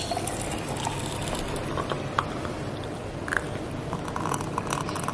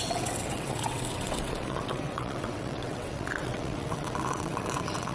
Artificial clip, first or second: second